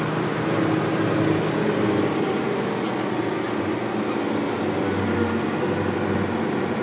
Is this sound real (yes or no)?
yes